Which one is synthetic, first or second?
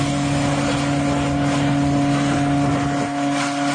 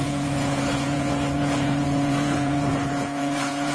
second